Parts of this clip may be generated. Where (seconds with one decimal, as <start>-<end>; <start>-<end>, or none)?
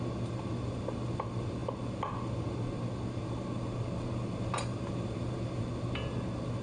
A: none